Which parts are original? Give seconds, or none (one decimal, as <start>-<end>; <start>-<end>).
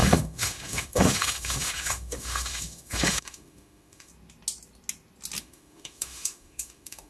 4.1-5.4